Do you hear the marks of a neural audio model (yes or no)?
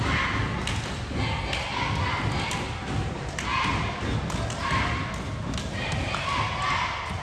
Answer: no